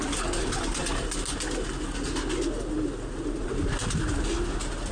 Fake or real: real